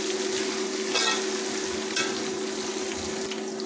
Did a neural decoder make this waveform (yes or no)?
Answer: no